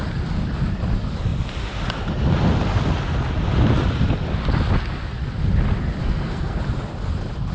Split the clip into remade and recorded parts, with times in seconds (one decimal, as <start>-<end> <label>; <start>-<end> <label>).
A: 0.0-6.0 recorded; 6.0-6.6 remade; 6.6-7.5 recorded